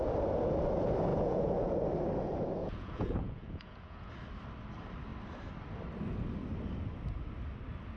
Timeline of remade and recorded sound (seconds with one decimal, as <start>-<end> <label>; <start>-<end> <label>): 0.0-1.1 recorded; 1.1-1.7 remade; 1.7-2.6 recorded; 2.6-4.1 remade; 4.1-8.0 recorded